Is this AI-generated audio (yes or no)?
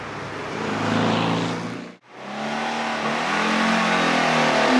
no